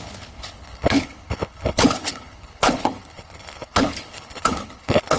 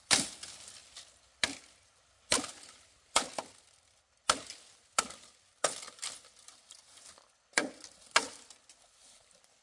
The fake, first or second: first